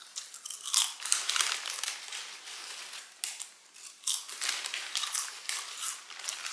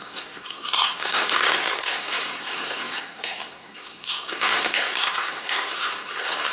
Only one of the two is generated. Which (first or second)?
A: second